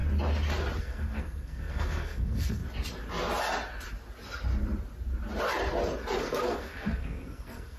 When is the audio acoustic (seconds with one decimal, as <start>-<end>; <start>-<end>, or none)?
0.0-0.8; 2.6-6.2